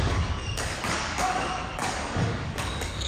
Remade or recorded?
remade